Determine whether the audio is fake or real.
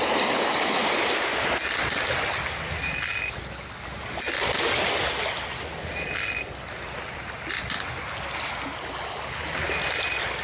real